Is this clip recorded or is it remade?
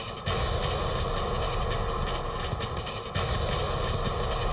recorded